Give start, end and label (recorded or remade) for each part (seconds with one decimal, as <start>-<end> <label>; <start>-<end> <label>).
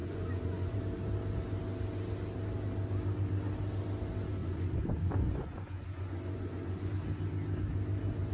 0.0-0.8 remade; 0.8-4.4 recorded; 4.4-6.9 remade; 6.9-8.3 recorded